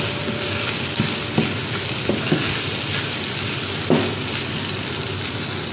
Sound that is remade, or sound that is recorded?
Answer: recorded